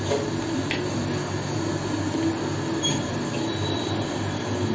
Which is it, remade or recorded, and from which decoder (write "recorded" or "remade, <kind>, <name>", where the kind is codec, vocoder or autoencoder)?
recorded